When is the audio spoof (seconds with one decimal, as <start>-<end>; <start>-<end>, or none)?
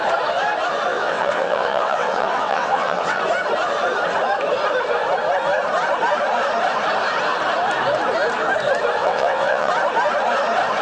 0.9-3.2; 9.0-9.7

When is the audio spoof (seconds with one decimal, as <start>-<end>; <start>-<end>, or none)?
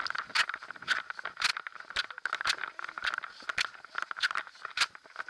none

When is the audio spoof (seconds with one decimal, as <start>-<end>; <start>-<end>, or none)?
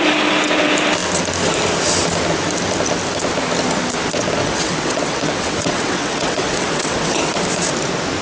4.4-7.3